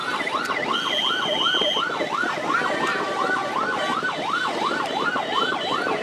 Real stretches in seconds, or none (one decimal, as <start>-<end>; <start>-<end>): 0.0-2.7